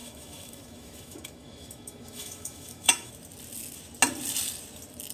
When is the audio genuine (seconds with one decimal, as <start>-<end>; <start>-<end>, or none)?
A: 3.1-5.1